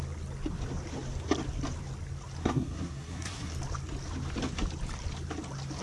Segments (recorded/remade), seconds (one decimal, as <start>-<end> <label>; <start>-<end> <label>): 0.0-2.4 recorded; 2.4-3.5 remade; 3.5-5.8 recorded